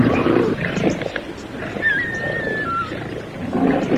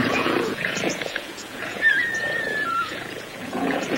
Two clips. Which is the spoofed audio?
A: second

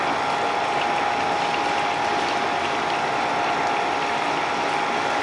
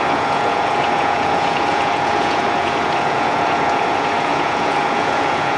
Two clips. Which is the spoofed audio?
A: second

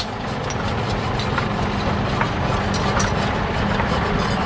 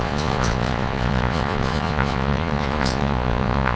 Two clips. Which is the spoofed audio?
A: second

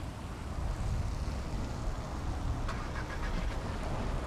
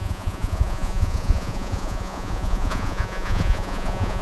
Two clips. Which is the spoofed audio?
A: second